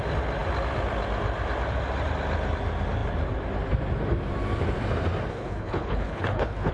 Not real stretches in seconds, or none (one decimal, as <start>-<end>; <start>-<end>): 5.3-6.7